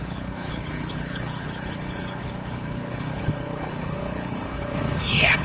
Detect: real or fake fake